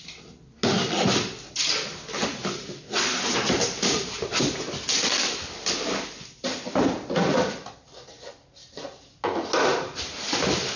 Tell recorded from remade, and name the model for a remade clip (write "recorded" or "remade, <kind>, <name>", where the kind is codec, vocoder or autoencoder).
recorded